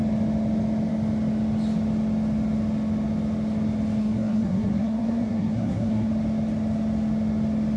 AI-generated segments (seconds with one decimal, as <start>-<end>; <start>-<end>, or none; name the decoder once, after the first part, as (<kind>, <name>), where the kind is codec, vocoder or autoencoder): 4.0-6.1 (codec, SNAC)